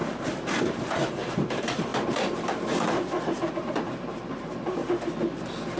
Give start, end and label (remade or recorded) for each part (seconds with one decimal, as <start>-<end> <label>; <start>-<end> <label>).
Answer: 0.0-4.8 remade; 4.8-5.8 recorded

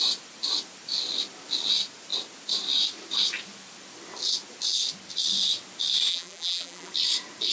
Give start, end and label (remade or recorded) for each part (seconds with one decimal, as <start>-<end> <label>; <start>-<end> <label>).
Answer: 0.0-6.1 recorded; 6.1-6.9 remade; 6.9-7.5 recorded